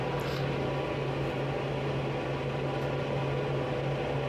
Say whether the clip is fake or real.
real